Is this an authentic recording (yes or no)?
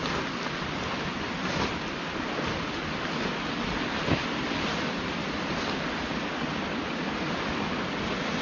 yes